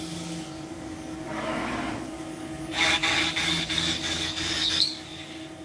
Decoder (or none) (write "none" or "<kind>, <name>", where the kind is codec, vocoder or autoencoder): codec, DAC